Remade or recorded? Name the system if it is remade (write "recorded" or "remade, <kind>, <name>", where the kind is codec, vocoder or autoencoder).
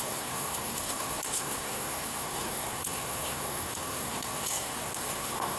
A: remade, codec, SNAC